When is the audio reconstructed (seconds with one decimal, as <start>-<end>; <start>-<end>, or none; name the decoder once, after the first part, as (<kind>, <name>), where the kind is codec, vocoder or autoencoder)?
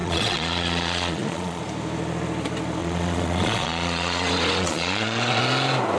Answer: 0.0-1.6 (vocoder, Vocos); 2.8-5.4